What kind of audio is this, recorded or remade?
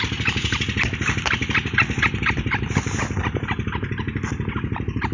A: recorded